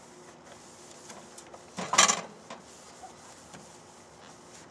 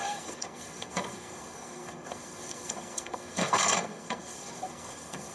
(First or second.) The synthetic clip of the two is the second